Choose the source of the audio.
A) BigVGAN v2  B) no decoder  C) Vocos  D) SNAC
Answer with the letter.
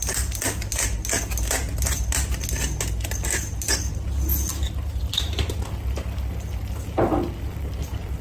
B